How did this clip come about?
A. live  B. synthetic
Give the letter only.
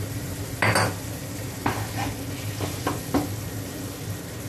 A